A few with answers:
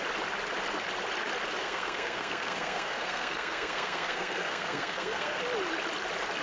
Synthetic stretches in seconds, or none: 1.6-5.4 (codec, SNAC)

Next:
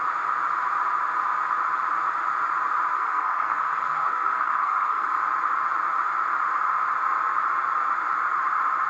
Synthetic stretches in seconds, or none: 2.9-5.2 (codec, SNAC)

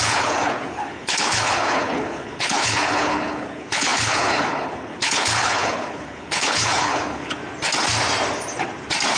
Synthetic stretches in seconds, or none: 0.0-7.4 (codec, HILCodec)

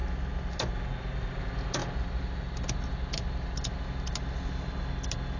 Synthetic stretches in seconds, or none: none

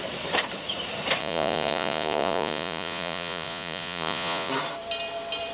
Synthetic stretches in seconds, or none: 1.2-4.5 (vocoder, Vocos)

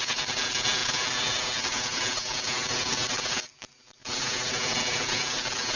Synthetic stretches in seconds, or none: none